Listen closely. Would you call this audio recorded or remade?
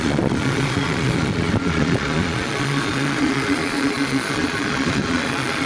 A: remade